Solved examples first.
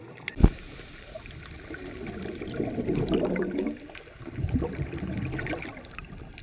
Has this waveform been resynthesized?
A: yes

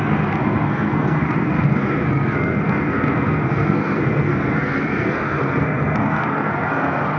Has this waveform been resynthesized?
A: yes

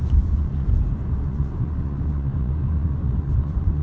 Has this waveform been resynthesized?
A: yes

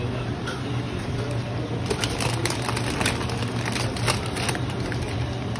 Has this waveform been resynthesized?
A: no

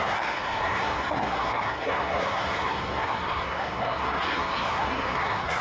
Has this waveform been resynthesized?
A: yes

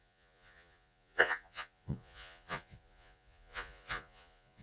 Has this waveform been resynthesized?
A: yes